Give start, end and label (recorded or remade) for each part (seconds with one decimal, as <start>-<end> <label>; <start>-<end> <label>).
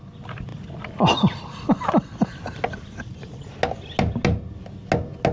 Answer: 0.0-5.3 recorded